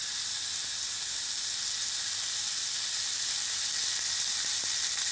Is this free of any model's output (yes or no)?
yes